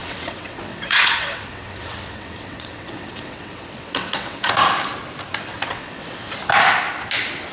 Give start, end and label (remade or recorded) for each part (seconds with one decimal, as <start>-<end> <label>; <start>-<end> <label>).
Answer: 0.0-4.5 remade; 4.5-5.5 recorded; 5.5-6.2 remade; 6.2-7.5 recorded